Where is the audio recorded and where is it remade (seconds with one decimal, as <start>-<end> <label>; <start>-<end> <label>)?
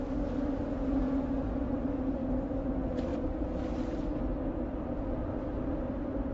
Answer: 0.0-2.2 recorded; 2.2-2.7 remade; 2.7-3.1 recorded; 3.1-4.2 remade; 4.2-6.3 recorded